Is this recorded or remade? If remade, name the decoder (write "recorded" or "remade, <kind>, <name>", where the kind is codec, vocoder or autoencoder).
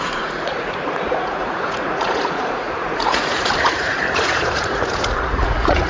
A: remade, vocoder, Vocos